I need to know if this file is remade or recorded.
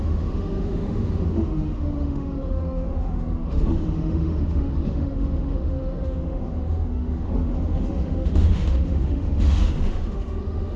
remade